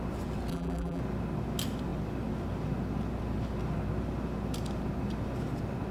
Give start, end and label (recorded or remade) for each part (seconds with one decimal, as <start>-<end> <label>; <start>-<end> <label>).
0.0-0.5 recorded; 0.5-1.0 remade; 1.0-5.9 recorded

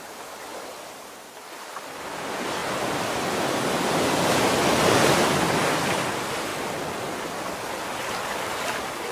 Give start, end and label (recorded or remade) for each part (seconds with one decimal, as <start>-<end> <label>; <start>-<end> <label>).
0.0-9.1 recorded

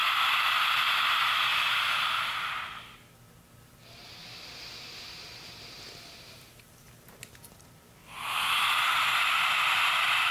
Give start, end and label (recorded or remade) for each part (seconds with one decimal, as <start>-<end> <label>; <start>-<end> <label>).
0.0-1.1 recorded; 1.1-1.5 remade; 1.5-4.4 recorded; 4.4-8.0 remade; 8.0-8.6 recorded; 8.6-9.1 remade; 9.1-10.3 recorded

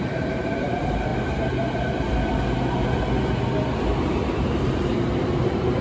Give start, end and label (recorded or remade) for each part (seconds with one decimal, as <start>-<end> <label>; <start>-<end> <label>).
0.0-1.1 remade; 1.1-4.6 recorded; 4.6-5.8 remade

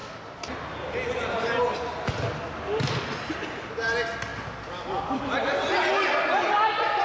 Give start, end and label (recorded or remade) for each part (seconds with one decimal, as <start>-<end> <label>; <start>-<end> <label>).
0.0-7.0 recorded

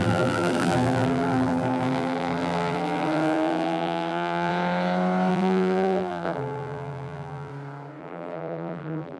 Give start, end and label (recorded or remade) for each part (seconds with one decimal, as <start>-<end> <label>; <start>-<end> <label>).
0.0-4.5 remade; 4.5-5.3 recorded; 5.3-7.5 remade; 7.5-8.0 recorded; 8.0-9.2 remade